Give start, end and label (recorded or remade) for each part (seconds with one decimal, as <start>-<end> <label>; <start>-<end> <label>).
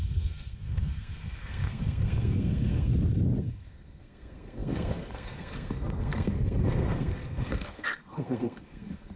0.0-2.9 remade; 2.9-3.4 recorded; 3.4-9.2 remade